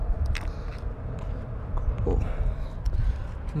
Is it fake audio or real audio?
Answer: fake